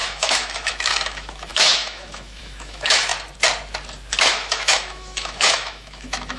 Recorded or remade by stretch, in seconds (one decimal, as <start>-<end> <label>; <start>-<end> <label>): 0.0-3.1 remade; 3.1-4.2 recorded; 4.2-6.4 remade